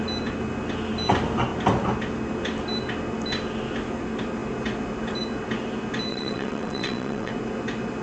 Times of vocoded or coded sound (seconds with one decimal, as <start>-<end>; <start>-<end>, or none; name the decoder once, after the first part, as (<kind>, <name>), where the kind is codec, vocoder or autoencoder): 6.1-7.3 (vocoder, WaveNeXt)

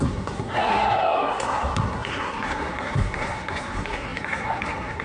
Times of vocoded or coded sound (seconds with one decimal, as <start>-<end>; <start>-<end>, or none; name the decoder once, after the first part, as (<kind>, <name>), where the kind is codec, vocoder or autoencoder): 0.0-5.0 (codec, SNAC)

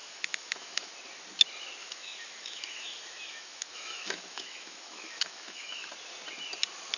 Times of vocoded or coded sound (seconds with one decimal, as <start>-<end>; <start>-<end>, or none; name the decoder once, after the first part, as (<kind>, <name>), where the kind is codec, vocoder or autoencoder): 0.0-0.9 (autoencoder, DAC-VAE); 1.8-5.9

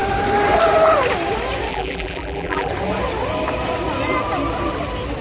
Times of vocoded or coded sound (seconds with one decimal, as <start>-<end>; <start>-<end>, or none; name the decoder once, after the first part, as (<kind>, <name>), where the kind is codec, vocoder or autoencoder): 1.7-2.7 (vocoder, BigVGAN v2)

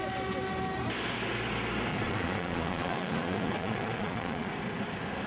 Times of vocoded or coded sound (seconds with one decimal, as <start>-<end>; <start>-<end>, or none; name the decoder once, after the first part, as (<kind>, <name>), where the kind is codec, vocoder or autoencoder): 1.9-4.5 (vocoder, Vocos)

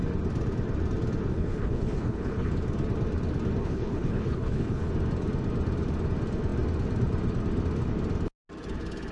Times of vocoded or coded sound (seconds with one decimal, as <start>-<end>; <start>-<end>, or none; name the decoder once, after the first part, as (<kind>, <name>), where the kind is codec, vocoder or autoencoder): 1.3-2.5 (codec, HILCodec); 3.6-4.9

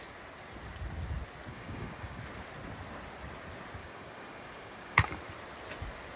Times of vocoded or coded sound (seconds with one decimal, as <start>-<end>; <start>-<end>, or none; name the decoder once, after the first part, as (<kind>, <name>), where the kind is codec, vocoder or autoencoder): 1.5-2.2 (codec, DAC); 3.8-5.2